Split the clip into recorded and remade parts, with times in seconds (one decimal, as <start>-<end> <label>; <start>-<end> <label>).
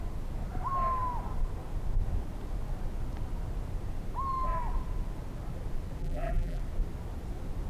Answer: 0.0-6.0 recorded; 6.0-6.6 remade; 6.6-7.7 recorded